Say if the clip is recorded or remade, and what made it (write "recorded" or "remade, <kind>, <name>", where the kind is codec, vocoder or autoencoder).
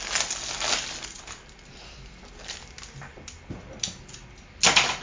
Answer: recorded